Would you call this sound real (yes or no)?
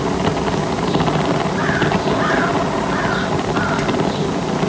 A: yes